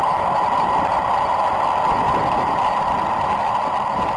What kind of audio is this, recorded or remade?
recorded